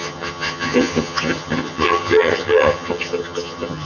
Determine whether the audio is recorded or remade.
remade